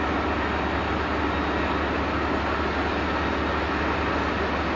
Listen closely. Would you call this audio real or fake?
real